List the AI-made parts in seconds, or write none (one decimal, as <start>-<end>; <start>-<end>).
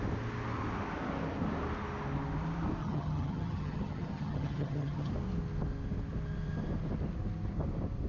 2.8-5.1